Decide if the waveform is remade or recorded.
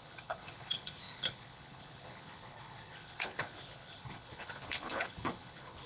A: remade